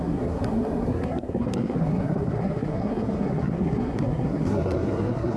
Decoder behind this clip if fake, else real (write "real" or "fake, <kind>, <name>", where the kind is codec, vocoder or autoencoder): fake, codec, SNAC